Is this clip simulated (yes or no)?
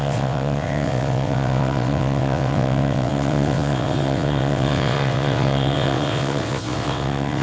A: yes